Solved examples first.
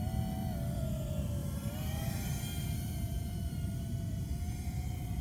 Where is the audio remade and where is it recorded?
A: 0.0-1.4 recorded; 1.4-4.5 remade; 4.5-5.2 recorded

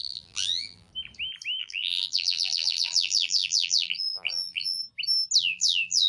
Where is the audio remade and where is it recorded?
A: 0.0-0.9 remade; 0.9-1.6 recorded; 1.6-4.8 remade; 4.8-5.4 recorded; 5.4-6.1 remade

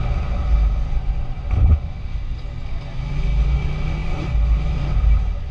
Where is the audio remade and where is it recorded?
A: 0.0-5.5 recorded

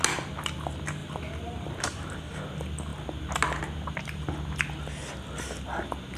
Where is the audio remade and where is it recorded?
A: 0.0-1.0 recorded; 1.0-1.8 remade; 1.8-6.2 recorded

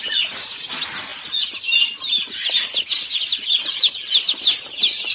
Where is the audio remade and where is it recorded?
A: 0.0-5.1 recorded

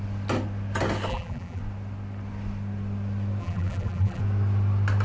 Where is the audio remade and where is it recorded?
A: 0.0-1.1 recorded; 1.1-1.6 remade; 1.6-3.4 recorded; 3.4-4.2 remade; 4.2-5.0 recorded